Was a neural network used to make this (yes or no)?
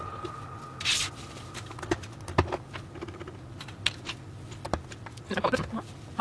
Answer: no